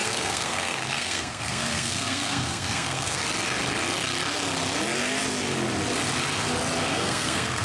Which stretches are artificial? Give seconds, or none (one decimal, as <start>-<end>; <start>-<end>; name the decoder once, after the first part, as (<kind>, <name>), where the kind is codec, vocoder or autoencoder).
0.0-3.2 (codec, SNAC); 6.9-7.6